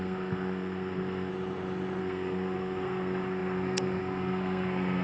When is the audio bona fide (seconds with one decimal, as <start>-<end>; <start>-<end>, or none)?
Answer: 1.3-2.0